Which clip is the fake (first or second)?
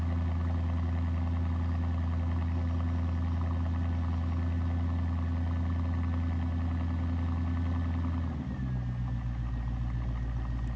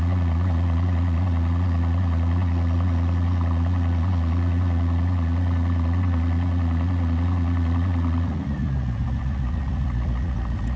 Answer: second